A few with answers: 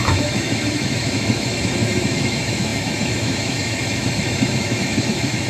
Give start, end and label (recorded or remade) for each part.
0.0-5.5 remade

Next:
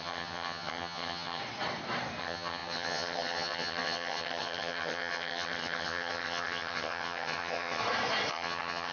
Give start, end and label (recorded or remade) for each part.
0.0-1.4 remade; 1.4-2.2 recorded; 2.2-7.8 remade; 7.8-8.3 recorded; 8.3-8.9 remade

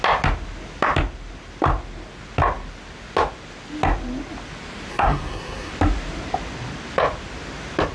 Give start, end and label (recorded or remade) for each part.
0.0-4.9 recorded; 4.9-5.7 remade; 5.7-7.9 recorded

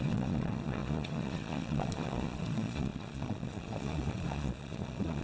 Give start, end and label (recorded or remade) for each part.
0.0-5.2 remade

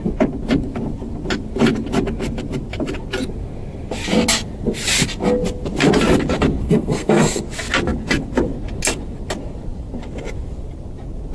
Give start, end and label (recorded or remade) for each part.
0.0-6.6 recorded; 6.6-7.4 remade; 7.4-11.3 recorded

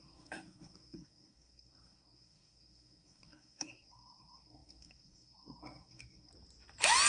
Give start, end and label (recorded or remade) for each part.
0.0-6.3 remade; 6.3-7.1 recorded